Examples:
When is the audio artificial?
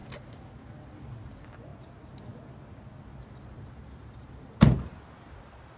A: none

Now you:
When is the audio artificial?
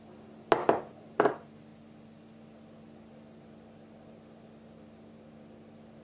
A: none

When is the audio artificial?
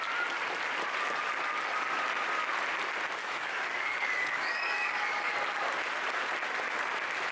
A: 3.2-5.3 (codec, DAC)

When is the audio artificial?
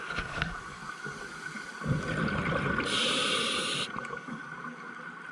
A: 0.0-0.8 (codec, DAC); 4.0-4.4